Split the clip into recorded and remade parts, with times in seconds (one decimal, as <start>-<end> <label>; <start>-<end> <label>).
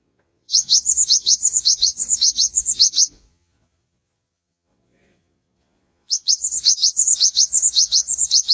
0.0-8.5 remade